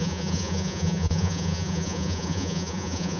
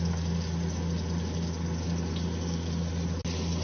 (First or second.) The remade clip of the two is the first